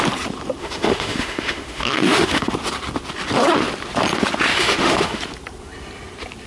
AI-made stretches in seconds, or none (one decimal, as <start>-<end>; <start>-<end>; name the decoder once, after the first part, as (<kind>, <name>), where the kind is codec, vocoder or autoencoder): 0.6-2.5 (autoencoder, DAC-VAE); 4.5-5.2